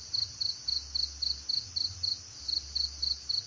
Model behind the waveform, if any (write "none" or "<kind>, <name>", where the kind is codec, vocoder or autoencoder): none